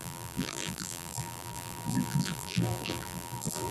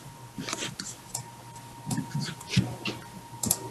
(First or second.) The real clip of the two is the second